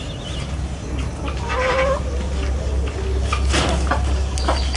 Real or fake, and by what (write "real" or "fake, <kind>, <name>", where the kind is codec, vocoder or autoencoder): real